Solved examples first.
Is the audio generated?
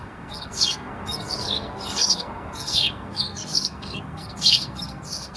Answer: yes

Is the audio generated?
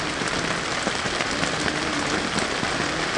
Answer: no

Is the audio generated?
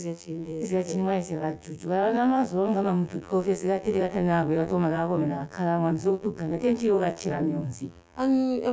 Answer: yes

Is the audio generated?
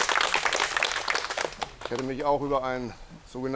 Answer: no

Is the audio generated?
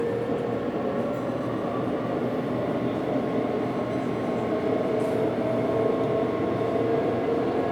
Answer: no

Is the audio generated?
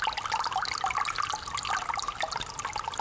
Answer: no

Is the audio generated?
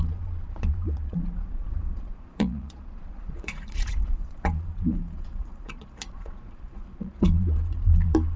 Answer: yes